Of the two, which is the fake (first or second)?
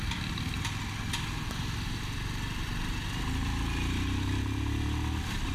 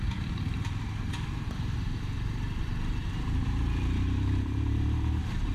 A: second